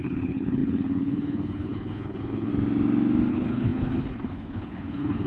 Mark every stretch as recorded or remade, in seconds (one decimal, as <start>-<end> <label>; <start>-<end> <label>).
0.0-2.5 remade; 2.5-3.3 recorded; 3.3-5.3 remade